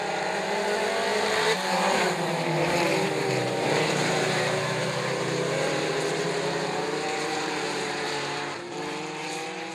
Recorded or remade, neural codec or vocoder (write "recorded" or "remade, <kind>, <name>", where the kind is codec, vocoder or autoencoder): remade, vocoder, BigVGAN v2